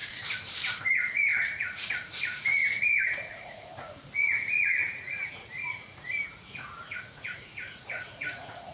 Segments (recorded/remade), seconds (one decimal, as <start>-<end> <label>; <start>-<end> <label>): 0.0-0.9 recorded; 0.9-8.7 remade